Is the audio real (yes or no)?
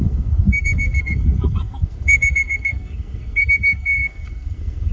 no